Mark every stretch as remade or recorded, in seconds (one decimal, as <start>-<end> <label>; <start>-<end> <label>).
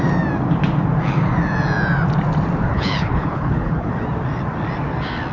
0.0-2.7 recorded; 2.7-3.9 remade; 3.9-5.3 recorded